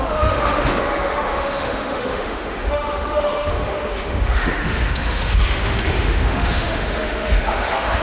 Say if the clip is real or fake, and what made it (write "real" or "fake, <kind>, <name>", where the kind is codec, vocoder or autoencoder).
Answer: fake, autoencoder, DAC-VAE